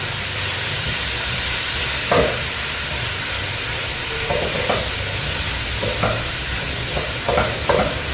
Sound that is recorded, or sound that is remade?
remade